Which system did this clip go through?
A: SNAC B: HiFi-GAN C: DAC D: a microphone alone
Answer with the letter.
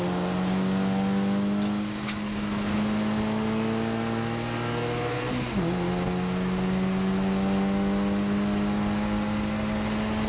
D